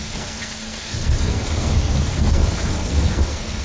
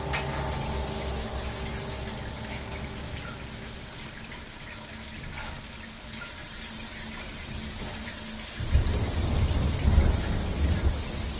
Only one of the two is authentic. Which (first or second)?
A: second